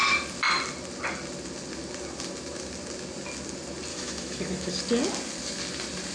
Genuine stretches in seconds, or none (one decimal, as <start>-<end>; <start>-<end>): 0.0-3.9; 4.7-6.1